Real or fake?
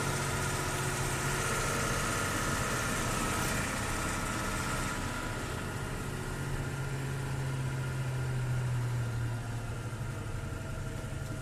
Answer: real